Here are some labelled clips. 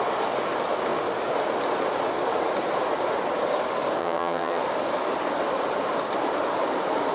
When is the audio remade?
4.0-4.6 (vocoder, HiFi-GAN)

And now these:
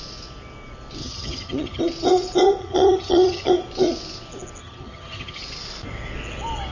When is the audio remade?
1.0-1.8 (vocoder, HiFi-GAN); 2.6-3.5; 4.6-5.4

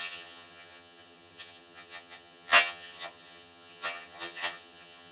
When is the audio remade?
0.0-5.1 (vocoder, HiFi-GAN)